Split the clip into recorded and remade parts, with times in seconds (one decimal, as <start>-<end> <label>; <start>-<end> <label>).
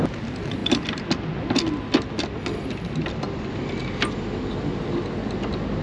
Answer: 0.0-5.8 recorded